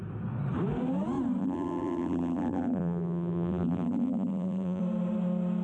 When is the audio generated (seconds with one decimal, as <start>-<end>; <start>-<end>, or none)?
1.4-4.8